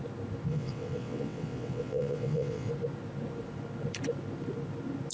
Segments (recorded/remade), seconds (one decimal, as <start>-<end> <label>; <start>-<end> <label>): 0.0-0.5 recorded; 0.5-2.7 remade; 2.7-5.1 recorded